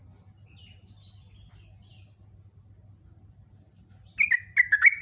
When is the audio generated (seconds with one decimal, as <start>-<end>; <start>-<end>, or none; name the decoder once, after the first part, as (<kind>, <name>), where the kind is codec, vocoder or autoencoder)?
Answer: none